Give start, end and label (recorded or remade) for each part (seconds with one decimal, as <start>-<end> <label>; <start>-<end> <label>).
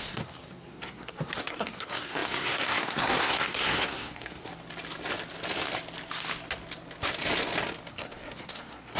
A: 0.0-4.5 remade; 4.5-7.9 recorded; 7.9-9.0 remade